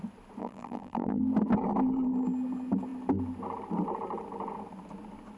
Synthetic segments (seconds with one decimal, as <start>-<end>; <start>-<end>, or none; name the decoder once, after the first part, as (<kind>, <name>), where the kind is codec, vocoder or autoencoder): 0.4-1.2 (vocoder, BigVGAN v2)